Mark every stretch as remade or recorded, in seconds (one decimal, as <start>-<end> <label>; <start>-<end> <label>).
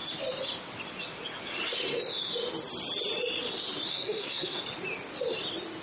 0.0-3.9 recorded; 3.9-4.6 remade; 4.6-5.8 recorded